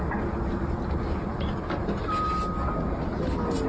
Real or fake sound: real